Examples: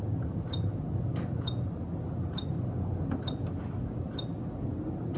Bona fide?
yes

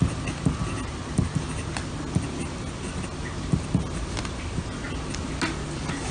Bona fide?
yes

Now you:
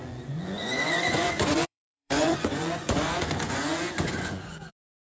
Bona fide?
no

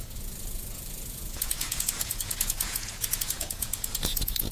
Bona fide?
no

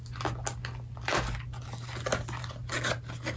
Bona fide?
yes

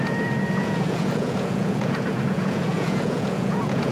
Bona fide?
no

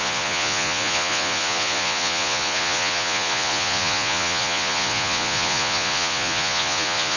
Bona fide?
no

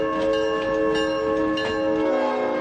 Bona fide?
yes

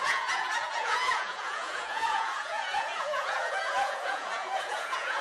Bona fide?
no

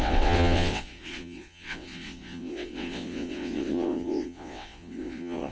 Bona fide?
no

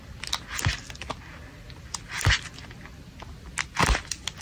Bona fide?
yes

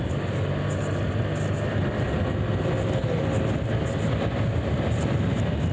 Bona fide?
yes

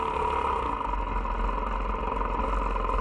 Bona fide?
yes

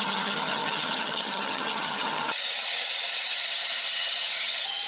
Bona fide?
no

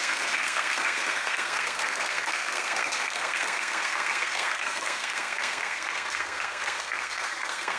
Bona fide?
no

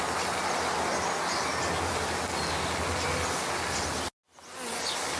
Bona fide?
yes